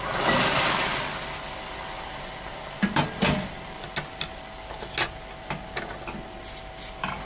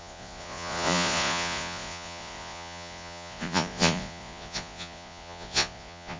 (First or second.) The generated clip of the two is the second